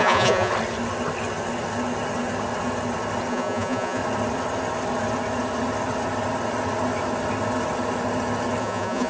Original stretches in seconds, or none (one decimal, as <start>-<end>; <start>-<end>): 0.5-3.3; 4.0-8.6